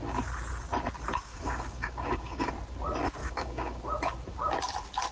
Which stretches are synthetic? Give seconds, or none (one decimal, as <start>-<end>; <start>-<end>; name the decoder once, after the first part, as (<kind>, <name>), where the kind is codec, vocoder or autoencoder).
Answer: 1.3-2.5 (codec, DAC); 3.2-3.8